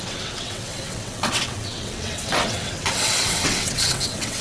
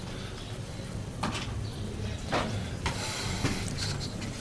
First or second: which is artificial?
first